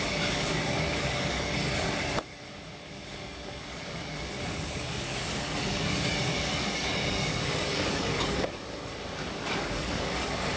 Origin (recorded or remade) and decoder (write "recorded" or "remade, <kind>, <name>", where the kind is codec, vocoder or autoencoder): remade, codec, DAC